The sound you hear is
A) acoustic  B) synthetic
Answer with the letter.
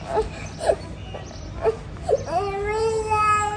A